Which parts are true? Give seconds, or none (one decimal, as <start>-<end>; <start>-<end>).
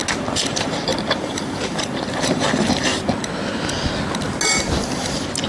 0.0-0.5; 2.9-5.5